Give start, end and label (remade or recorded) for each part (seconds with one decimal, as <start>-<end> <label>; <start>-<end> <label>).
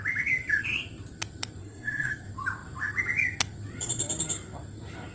0.0-1.6 recorded; 1.6-2.1 remade; 2.1-5.1 recorded